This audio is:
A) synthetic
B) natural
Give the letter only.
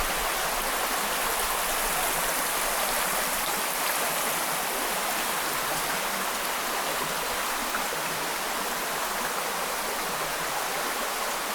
B